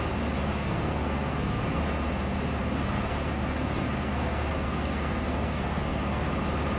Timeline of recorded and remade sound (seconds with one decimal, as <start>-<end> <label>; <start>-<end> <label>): 0.0-0.5 recorded; 0.5-1.8 remade; 1.8-2.6 recorded; 2.6-6.3 remade; 6.3-6.8 recorded